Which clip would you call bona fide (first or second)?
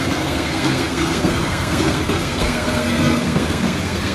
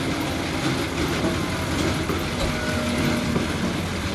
second